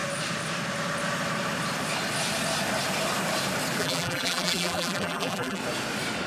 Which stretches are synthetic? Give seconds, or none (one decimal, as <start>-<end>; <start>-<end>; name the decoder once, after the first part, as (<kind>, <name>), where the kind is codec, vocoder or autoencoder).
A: 3.8-5.6 (vocoder, BigVGAN v2)